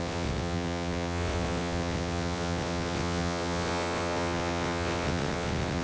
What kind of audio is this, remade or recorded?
remade